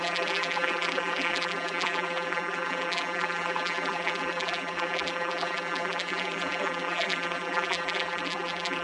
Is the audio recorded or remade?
remade